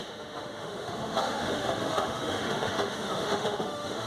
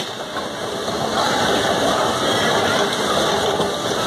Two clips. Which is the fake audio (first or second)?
first